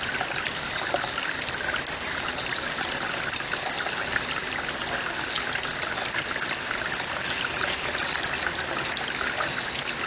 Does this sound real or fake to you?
real